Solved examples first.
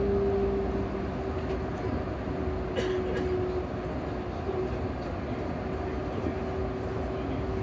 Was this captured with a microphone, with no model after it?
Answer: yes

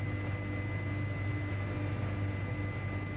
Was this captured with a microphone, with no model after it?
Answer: yes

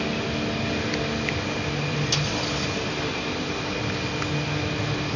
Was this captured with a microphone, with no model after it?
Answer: yes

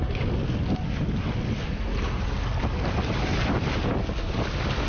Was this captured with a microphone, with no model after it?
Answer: yes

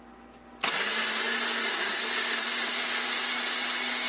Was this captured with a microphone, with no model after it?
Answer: yes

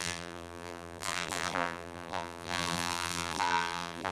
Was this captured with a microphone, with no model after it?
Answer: no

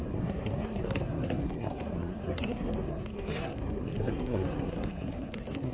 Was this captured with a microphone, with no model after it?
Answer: no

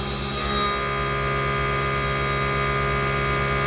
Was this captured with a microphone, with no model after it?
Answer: yes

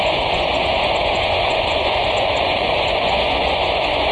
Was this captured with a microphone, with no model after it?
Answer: no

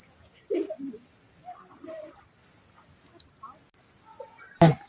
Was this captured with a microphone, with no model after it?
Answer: yes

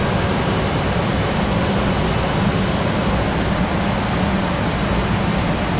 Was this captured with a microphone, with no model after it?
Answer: yes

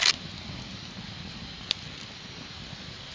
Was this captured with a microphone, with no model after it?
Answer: yes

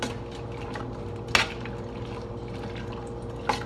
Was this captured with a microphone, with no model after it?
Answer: yes